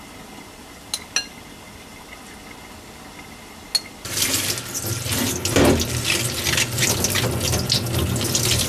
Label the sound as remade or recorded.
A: recorded